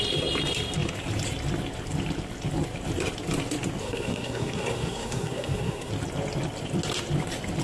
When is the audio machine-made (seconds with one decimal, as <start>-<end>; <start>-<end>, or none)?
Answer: 3.8-5.9